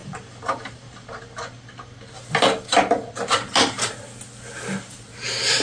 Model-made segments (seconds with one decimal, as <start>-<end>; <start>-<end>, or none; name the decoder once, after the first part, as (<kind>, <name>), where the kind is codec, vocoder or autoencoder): 0.0-1.2 (vocoder, BigVGAN v2)